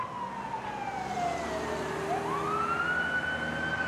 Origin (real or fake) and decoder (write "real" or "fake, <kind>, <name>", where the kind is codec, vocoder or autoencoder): real